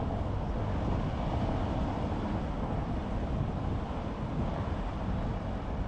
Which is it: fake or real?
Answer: real